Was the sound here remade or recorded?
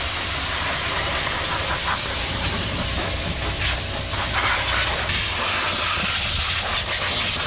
recorded